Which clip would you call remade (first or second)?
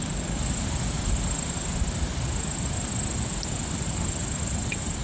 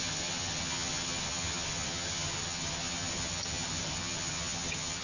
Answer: second